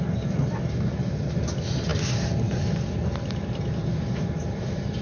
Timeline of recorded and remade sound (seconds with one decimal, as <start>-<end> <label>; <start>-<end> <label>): 0.0-1.9 recorded; 1.9-5.0 remade